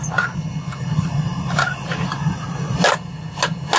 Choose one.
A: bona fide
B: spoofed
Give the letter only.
A